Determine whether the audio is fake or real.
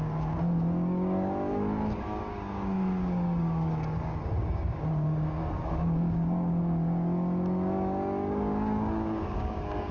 fake